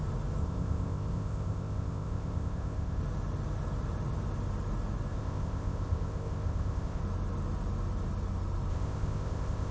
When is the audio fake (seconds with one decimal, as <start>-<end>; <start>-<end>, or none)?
0.4-3.0; 5.1-7.0; 8.7-9.7